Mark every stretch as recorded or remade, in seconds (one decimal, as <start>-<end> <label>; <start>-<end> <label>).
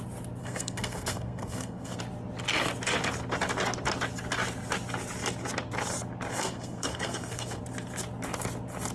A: 0.0-0.4 recorded; 0.4-2.0 remade; 2.0-6.3 recorded; 6.3-7.6 remade; 7.6-8.9 recorded